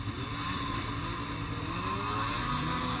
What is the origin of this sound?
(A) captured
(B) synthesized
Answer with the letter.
A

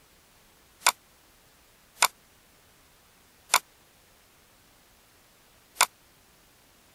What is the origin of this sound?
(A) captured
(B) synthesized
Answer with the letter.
A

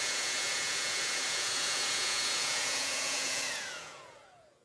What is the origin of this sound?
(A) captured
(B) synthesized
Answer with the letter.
B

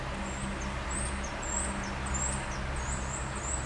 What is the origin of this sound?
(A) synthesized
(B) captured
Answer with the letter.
B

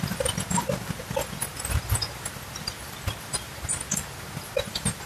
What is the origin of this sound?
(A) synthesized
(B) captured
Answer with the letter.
B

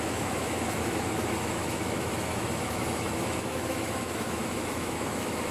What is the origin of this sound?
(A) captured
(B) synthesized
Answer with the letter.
B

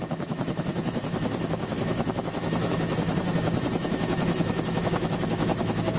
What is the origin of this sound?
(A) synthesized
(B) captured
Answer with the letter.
A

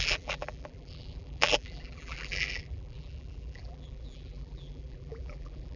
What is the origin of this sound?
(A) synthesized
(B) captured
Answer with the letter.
A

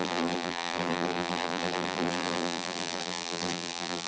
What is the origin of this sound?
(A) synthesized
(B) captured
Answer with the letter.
A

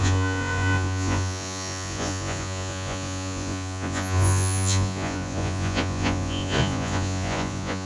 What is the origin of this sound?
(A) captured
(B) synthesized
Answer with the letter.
B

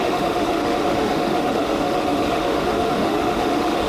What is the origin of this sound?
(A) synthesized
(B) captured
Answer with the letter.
A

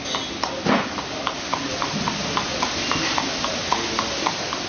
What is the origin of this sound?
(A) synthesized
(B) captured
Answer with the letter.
B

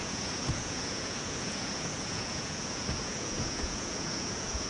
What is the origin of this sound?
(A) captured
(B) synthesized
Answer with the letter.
B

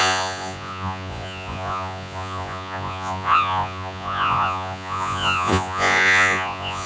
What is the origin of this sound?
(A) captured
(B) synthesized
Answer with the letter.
B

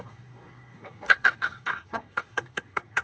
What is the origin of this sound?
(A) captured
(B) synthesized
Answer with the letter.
B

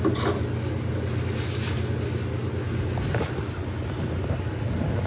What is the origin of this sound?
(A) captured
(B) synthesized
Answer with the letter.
A